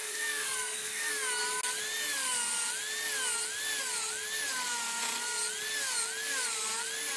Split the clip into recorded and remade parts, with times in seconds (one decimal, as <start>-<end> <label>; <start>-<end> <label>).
0.0-1.1 remade; 1.1-7.2 recorded